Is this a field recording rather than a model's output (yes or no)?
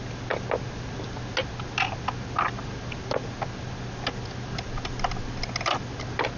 yes